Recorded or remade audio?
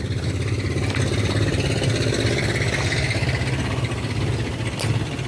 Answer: recorded